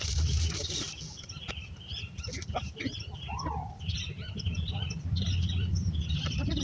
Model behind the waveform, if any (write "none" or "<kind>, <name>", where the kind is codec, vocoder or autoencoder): vocoder, BigVGAN v2